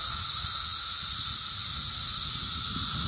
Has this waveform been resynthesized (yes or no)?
yes